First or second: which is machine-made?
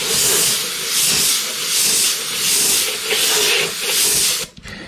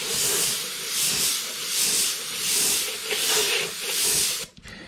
second